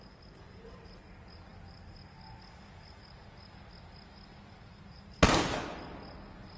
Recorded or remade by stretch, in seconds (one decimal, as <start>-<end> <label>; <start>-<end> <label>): 0.0-6.6 recorded